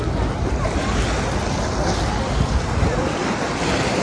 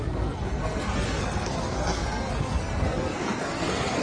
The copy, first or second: second